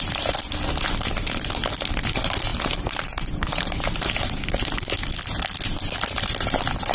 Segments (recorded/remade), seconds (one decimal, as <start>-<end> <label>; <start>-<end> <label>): 0.0-2.5 recorded; 2.5-4.9 remade; 4.9-6.9 recorded